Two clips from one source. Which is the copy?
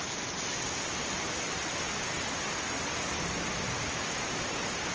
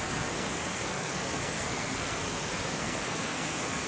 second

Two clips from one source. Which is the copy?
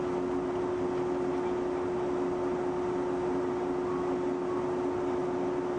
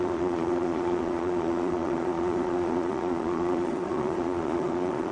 second